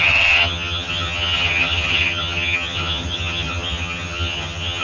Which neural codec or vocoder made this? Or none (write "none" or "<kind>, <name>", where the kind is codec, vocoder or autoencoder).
vocoder, HiFi-GAN